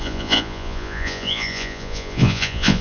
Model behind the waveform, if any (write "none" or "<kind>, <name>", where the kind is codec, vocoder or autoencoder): vocoder, Vocos